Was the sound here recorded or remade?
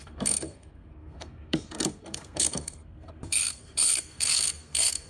remade